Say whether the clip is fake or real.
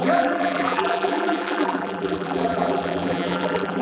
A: fake